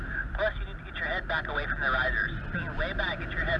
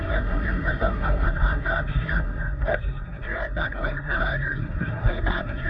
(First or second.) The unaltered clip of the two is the first